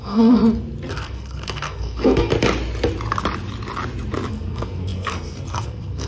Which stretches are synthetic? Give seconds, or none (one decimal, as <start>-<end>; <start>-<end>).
0.0-0.4; 0.9-2.3; 4.3-6.1